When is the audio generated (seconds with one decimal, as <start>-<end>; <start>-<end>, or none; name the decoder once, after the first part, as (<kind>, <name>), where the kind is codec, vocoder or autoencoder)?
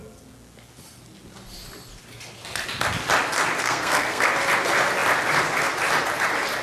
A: 3.6-4.3 (codec, SNAC)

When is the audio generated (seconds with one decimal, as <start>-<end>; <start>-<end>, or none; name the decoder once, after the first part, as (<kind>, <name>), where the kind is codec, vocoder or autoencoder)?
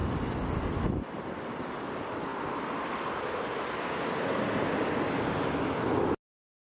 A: none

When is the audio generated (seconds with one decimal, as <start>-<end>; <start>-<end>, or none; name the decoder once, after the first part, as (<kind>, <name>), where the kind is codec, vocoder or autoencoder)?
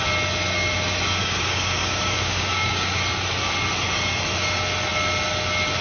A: 1.2-3.0 (codec, DAC)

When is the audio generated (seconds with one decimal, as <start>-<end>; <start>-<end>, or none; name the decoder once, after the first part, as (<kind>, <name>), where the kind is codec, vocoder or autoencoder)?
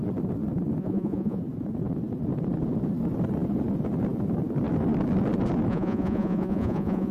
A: 0.8-1.4 (vocoder, Vocos); 5.7-7.1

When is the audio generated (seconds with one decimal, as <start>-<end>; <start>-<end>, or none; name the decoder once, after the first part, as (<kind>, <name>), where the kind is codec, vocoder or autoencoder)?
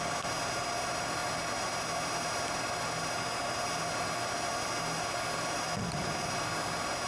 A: none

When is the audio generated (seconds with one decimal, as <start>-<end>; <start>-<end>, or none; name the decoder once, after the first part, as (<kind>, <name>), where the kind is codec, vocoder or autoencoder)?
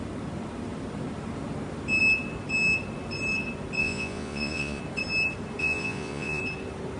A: 3.8-4.8 (vocoder, Vocos); 5.6-6.4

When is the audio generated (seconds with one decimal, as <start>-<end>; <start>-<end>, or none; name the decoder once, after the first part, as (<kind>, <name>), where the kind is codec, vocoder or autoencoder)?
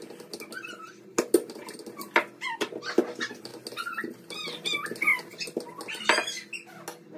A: none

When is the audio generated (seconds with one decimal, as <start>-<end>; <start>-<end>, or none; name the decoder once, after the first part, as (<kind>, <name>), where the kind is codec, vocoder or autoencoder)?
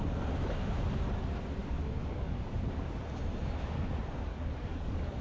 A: 1.6-2.6 (codec, DAC); 4.3-5.2